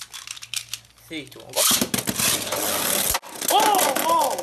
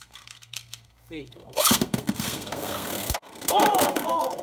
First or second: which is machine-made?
second